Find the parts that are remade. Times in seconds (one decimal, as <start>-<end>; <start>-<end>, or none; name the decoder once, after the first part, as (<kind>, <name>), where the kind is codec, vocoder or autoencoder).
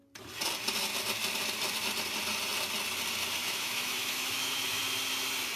3.4-4.8 (autoencoder, DAC-VAE)